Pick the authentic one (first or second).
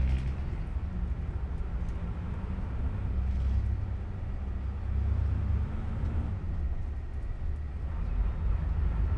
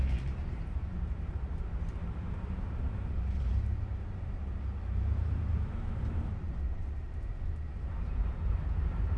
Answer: first